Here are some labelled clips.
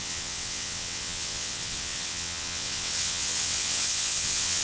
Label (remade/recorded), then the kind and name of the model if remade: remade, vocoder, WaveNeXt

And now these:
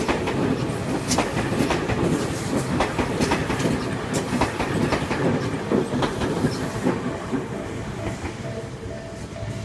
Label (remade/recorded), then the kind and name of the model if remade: recorded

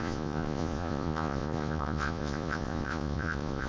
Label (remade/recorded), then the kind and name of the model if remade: remade, vocoder, Vocos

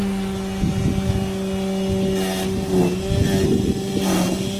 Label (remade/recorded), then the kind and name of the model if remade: recorded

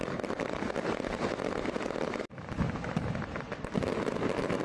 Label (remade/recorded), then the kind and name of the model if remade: recorded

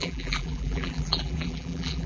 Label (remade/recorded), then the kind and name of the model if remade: remade, vocoder, BigVGAN v2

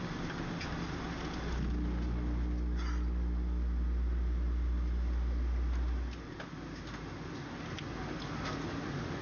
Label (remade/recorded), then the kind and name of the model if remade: recorded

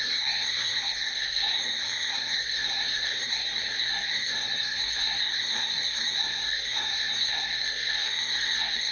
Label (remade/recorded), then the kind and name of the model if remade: remade, codec, SNAC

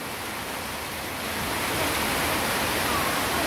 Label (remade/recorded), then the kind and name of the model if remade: recorded